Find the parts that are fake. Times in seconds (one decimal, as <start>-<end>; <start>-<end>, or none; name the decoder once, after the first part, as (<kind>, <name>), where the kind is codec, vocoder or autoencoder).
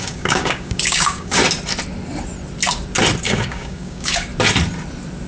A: 0.0-1.4 (codec, DAC); 3.2-4.3